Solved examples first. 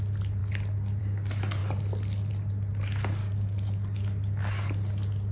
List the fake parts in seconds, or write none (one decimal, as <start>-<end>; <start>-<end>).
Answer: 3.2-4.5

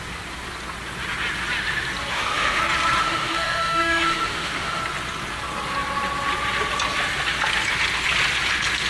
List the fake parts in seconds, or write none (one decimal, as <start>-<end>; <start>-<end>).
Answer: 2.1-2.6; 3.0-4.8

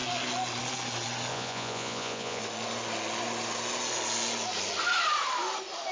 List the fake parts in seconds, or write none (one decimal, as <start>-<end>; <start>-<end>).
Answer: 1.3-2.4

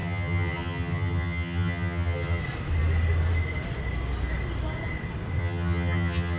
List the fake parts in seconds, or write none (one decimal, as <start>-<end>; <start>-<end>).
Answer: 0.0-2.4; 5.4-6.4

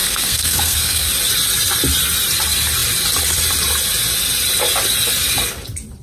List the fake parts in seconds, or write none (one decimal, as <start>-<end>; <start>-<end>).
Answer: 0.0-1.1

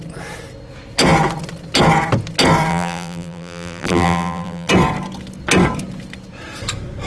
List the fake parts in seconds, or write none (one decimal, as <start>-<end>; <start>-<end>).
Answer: 2.7-4.7

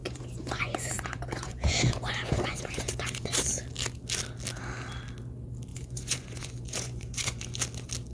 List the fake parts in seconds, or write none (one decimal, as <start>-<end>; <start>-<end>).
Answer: 0.0-3.5; 5.7-7.4